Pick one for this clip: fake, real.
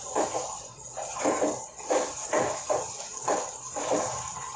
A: real